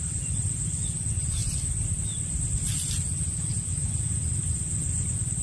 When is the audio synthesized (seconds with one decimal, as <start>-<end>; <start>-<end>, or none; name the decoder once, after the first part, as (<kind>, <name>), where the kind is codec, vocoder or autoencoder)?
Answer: none